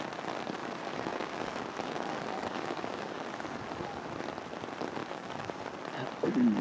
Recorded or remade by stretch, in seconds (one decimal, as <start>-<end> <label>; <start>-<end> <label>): 0.0-0.6 recorded; 0.6-3.6 remade; 3.6-5.0 recorded; 5.0-5.7 remade; 5.7-6.6 recorded